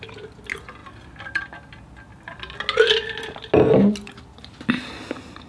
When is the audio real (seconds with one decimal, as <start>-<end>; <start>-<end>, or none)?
0.0-5.5